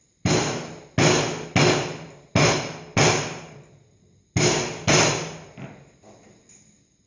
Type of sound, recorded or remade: recorded